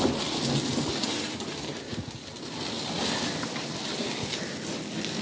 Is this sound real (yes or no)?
yes